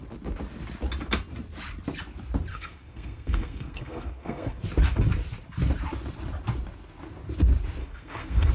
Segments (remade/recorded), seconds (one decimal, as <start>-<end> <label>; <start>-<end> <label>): 0.0-2.5 recorded; 2.5-4.6 remade; 4.6-7.8 recorded; 7.8-8.5 remade